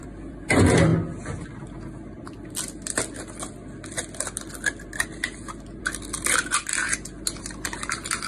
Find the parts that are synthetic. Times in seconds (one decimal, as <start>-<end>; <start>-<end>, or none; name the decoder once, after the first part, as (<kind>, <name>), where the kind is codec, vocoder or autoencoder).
0.0-0.9 (vocoder, BigVGAN v2); 5.8-6.8; 7.4-8.3

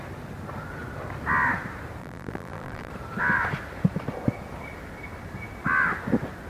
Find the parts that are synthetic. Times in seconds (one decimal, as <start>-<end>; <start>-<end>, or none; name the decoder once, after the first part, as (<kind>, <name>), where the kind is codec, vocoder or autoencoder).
2.0-2.9 (vocoder, BigVGAN v2)